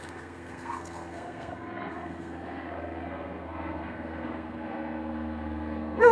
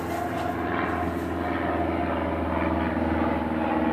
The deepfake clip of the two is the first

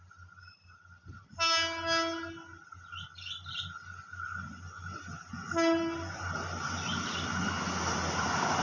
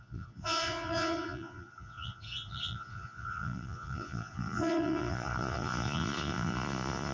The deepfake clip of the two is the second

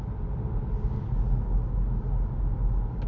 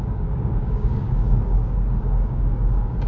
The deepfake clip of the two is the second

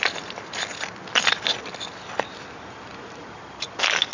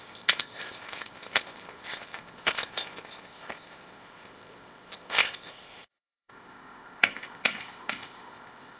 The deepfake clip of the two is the second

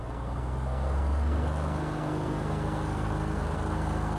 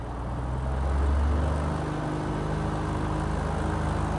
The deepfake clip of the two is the first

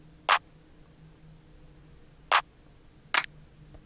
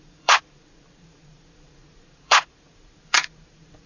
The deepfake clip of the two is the second